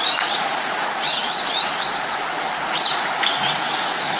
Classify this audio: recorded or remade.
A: remade